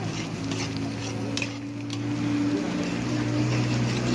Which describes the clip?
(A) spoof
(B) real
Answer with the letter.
B